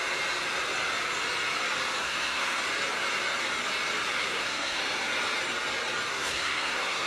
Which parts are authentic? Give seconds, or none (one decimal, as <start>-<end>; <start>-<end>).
0.0-2.0; 2.6-4.2; 4.8-6.1